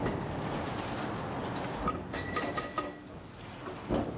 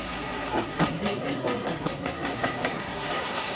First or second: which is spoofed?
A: second